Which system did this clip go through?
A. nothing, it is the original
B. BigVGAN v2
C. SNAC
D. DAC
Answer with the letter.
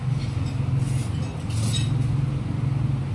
A